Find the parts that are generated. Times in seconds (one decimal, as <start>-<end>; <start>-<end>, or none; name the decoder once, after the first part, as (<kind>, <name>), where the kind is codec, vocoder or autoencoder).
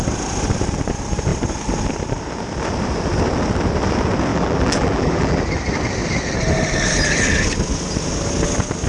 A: 4.3-5.4 (vocoder, BigVGAN v2)